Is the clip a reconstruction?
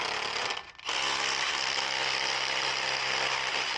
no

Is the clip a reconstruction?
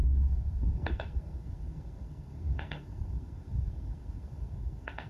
yes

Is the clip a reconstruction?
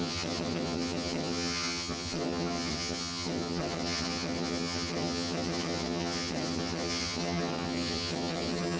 yes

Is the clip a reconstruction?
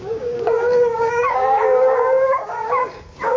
yes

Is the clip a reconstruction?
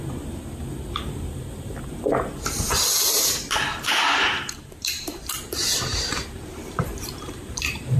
yes